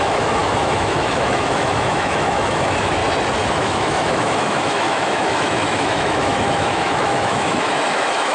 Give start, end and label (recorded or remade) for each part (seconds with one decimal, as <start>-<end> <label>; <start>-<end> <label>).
0.0-3.0 remade; 3.0-3.5 recorded; 3.5-8.3 remade

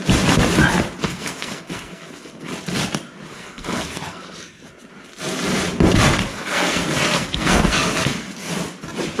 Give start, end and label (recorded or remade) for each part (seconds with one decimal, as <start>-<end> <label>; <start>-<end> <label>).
0.0-1.0 recorded; 1.0-2.5 remade; 2.5-3.3 recorded; 3.3-4.7 remade; 4.7-6.3 recorded; 6.3-8.5 remade; 8.5-9.2 recorded

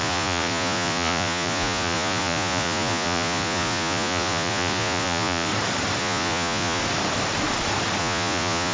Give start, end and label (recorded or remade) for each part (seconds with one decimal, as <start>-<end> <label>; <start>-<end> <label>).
0.0-5.5 remade; 5.5-6.0 recorded; 6.0-6.8 remade; 6.8-8.0 recorded; 8.0-8.7 remade

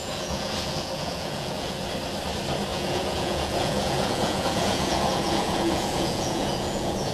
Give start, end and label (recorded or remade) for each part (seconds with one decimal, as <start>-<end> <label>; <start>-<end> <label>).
0.0-1.8 remade; 1.8-2.7 recorded; 2.7-7.1 remade

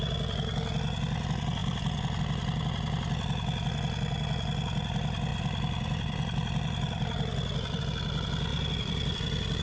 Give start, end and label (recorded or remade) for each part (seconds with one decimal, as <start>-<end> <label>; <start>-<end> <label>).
0.0-1.6 recorded; 1.6-2.2 remade; 2.2-5.3 recorded; 5.3-7.8 remade; 7.8-8.5 recorded; 8.5-9.6 remade